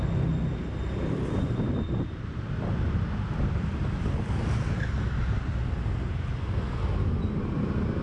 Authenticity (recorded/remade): recorded